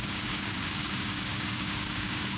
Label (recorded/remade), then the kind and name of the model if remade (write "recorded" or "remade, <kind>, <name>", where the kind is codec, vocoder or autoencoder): remade, codec, DAC